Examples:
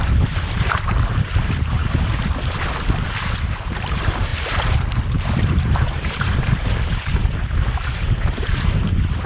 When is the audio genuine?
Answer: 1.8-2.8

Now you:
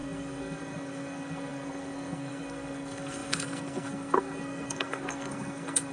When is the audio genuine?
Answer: none

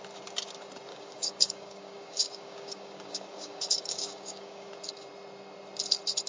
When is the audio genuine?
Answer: 0.0-0.9; 4.7-6.3

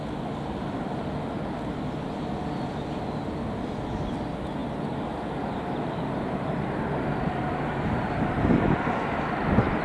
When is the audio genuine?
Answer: 0.0-9.8

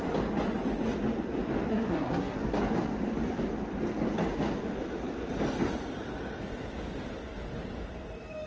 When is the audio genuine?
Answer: 0.0-1.7; 2.4-8.5